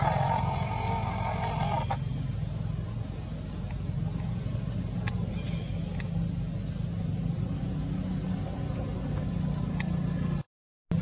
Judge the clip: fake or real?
real